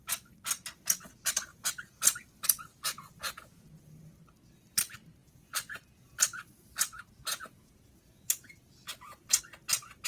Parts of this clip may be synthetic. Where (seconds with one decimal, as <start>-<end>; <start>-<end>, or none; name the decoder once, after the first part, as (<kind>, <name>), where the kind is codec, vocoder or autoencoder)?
1.5-3.9 (vocoder, Vocos); 5.2-9.4